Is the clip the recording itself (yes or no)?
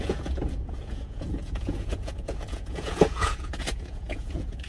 no